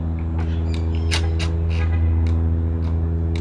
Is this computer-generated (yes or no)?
no